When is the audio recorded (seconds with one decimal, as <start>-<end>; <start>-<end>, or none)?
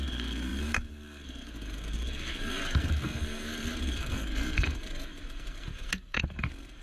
none